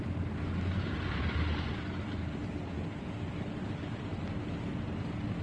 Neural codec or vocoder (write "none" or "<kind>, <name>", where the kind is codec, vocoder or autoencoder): none